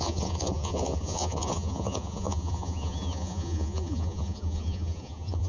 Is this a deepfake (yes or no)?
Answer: yes